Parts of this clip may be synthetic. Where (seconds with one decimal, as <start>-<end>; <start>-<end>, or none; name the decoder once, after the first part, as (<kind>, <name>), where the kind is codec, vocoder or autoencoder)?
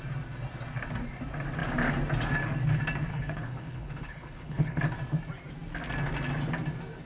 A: 3.1-4.8 (codec, HILCodec)